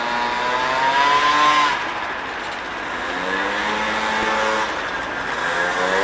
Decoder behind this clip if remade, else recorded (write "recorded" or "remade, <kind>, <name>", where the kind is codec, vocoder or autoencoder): recorded